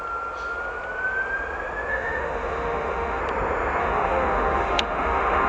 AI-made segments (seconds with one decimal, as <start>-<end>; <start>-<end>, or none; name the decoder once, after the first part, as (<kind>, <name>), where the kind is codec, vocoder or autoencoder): 1.9-3.2 (autoencoder, DAC-VAE); 3.8-5.5